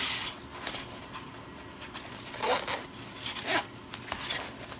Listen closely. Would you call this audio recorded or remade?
recorded